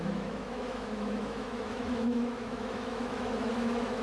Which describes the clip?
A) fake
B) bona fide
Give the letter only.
A